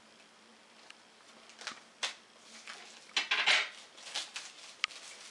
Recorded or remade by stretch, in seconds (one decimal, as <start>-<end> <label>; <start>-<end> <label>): 0.0-5.3 recorded